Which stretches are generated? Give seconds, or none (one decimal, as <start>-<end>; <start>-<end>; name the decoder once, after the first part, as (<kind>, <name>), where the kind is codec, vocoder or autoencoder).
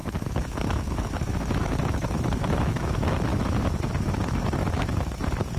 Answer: 0.0-5.6 (autoencoder, DAC-VAE)